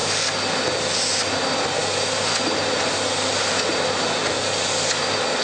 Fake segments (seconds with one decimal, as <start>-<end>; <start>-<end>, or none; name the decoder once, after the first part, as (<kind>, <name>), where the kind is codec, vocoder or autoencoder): none